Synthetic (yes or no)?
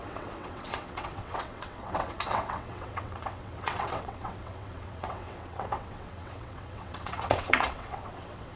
yes